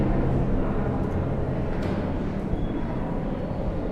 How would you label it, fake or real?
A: real